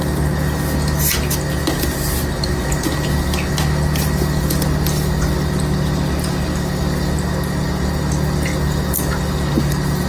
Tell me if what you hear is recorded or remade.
recorded